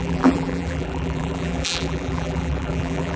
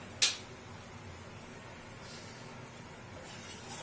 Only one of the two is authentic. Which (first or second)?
second